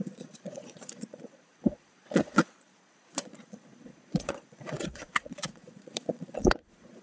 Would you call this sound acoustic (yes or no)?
no